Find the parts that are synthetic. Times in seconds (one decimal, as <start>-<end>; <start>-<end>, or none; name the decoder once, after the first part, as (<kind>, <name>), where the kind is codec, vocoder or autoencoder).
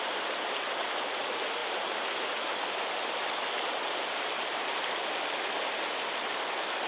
none